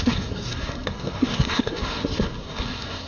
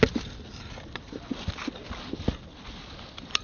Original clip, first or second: second